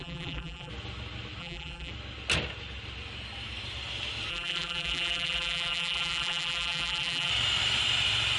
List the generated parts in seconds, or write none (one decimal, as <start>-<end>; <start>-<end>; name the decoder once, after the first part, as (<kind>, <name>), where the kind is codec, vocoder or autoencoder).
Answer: 0.0-0.7 (vocoder, BigVGAN v2); 1.4-1.9; 4.3-7.3